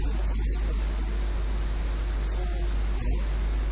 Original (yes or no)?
yes